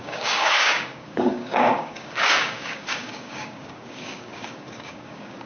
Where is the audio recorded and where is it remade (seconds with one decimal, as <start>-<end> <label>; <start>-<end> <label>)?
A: 0.0-5.5 remade